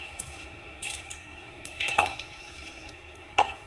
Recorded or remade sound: remade